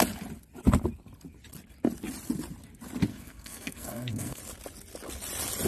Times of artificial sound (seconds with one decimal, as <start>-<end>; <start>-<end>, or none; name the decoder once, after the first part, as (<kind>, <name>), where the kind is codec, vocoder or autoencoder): 3.1-4.4 (codec, SNAC)